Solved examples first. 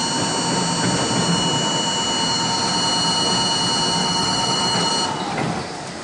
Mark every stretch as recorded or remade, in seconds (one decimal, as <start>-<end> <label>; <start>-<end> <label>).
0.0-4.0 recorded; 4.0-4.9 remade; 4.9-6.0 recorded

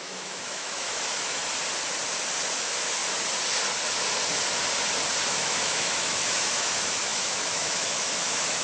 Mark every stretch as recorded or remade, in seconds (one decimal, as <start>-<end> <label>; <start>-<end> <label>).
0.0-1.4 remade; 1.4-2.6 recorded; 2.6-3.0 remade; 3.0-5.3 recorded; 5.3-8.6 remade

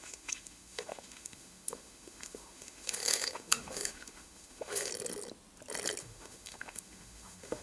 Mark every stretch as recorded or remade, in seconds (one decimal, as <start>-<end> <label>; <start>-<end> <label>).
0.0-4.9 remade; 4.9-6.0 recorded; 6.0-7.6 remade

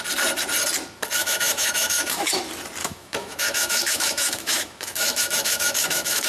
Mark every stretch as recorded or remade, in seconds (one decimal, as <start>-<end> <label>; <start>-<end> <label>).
0.0-1.2 recorded; 1.2-2.4 remade; 2.4-2.8 recorded; 2.8-6.3 remade

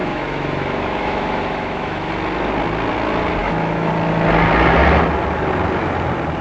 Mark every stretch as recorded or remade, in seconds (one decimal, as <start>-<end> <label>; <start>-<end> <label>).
0.0-2.1 remade; 2.1-3.4 recorded; 3.4-3.9 remade; 3.9-6.4 recorded

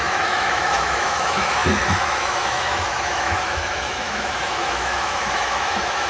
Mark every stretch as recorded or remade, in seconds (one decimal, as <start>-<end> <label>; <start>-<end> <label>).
0.0-6.1 remade

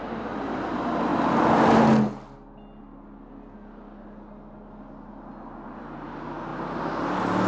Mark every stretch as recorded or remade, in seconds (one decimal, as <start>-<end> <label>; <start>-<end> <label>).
0.0-7.5 recorded